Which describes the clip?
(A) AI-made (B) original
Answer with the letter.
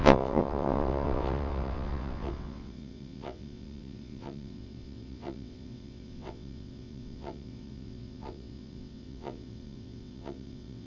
A